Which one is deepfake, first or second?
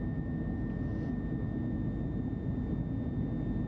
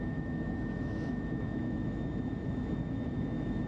second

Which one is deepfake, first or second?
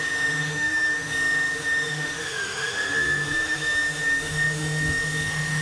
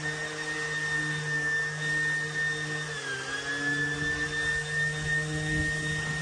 first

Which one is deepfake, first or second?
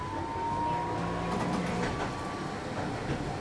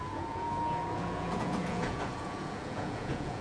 second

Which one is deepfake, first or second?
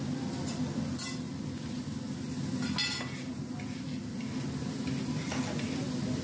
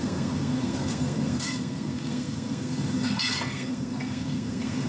second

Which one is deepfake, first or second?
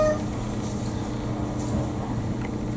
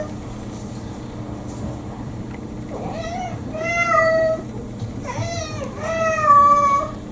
second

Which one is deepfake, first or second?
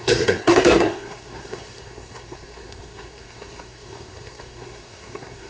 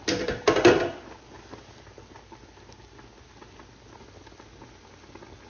first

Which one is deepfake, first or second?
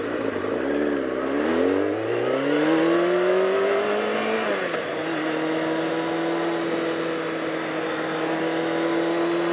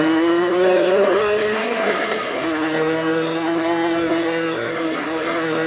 second